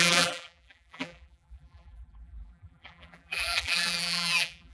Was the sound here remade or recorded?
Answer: remade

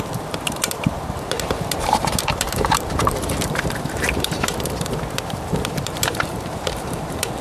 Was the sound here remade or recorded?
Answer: remade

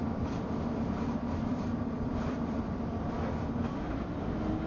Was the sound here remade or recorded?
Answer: remade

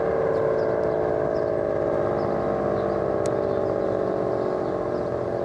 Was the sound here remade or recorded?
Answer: recorded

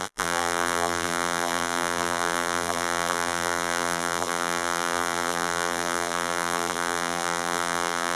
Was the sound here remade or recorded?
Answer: remade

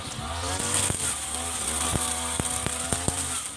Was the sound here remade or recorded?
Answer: recorded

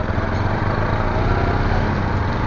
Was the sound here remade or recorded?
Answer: recorded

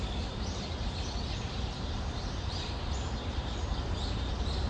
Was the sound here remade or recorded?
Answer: remade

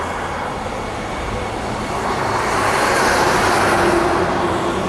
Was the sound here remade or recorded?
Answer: recorded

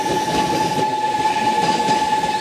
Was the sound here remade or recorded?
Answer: remade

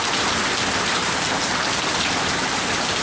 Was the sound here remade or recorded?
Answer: remade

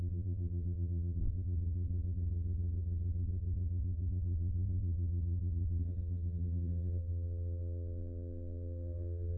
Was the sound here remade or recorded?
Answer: remade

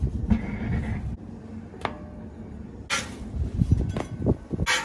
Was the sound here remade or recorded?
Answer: recorded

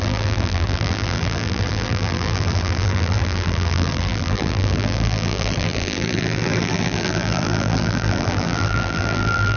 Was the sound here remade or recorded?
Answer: remade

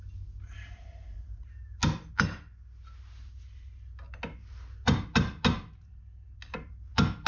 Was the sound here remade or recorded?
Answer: recorded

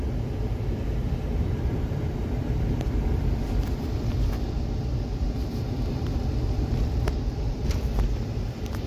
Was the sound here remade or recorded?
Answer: remade